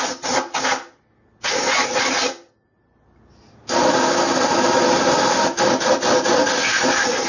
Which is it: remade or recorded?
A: recorded